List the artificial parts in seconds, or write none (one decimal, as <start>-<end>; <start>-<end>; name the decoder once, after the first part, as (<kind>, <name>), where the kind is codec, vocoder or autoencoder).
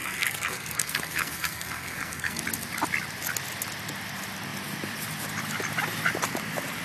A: 0.0-2.4 (codec, SNAC)